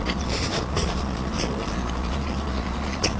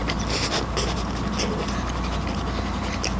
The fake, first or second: first